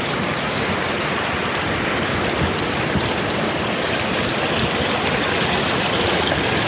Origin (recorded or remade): recorded